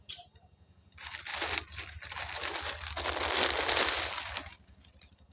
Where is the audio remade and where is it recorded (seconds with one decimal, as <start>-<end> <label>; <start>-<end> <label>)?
0.0-5.3 recorded